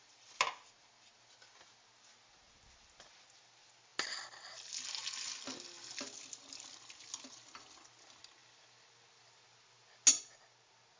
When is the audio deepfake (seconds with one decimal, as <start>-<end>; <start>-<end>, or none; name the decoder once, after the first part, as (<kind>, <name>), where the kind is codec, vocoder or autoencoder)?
none